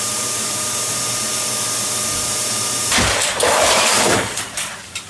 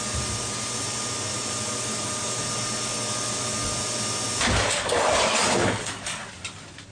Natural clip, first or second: second